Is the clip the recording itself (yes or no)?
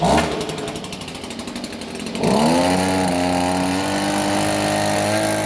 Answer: yes